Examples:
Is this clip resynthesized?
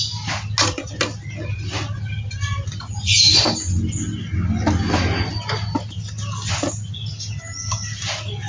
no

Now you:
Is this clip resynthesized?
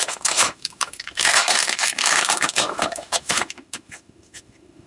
yes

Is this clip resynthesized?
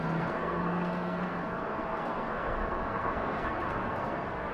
yes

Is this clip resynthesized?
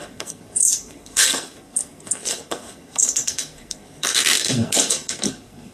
yes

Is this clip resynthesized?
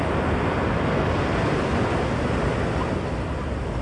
no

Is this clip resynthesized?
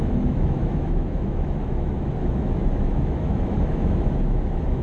yes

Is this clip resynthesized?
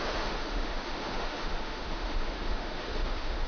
yes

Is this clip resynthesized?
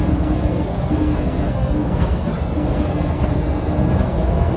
yes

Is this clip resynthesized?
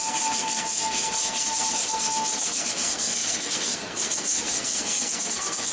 yes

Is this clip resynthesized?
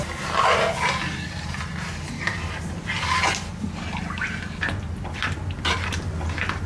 no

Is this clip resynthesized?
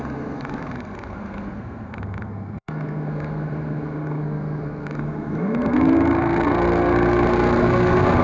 yes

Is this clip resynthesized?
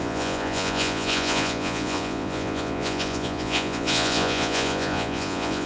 yes